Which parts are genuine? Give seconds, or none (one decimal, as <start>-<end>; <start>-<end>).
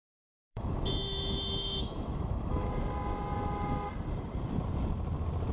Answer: 2.7-5.5